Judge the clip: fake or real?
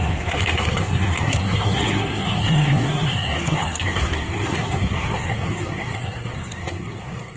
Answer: fake